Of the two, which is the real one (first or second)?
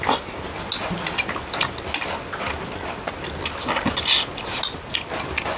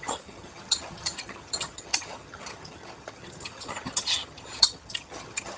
first